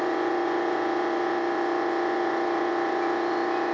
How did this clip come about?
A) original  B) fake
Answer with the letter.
B